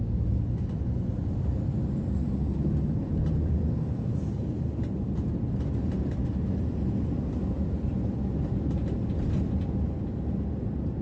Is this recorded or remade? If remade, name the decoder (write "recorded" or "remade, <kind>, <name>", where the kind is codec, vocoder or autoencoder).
recorded